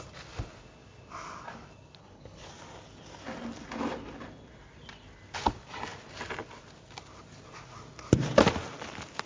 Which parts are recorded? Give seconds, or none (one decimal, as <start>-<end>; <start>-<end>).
0.0-2.0; 2.5-9.3